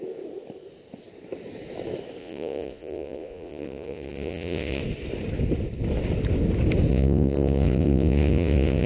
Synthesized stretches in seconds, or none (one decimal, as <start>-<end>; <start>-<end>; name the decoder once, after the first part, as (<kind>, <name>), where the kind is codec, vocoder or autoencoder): 2.2-4.8 (vocoder, Vocos); 6.9-8.9